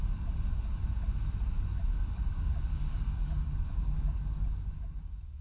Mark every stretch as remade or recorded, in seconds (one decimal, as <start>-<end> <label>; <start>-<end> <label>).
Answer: 0.0-2.3 recorded; 2.3-5.4 remade